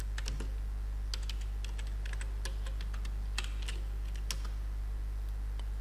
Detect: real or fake real